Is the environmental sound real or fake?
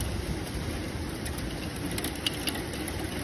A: real